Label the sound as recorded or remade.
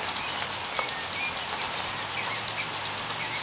recorded